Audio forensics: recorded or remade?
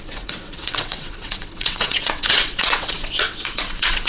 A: remade